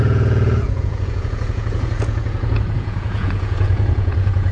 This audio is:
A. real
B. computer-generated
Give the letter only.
B